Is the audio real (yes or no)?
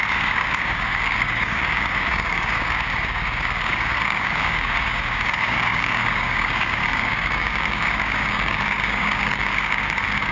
no